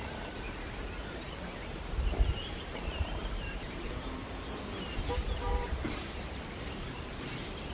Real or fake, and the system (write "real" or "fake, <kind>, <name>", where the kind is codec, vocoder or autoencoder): fake, vocoder, BigVGAN v2